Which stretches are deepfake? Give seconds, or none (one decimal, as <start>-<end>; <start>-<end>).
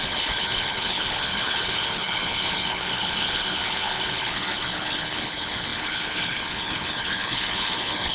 0.0-8.1